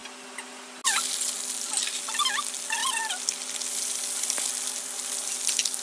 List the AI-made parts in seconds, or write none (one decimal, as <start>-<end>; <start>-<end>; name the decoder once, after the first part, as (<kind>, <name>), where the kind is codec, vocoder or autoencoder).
none